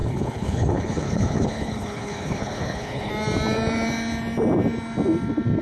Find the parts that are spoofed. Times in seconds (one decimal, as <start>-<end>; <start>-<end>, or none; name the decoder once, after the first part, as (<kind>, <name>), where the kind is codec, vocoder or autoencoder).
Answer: 0.0-3.1 (codec, HILCodec)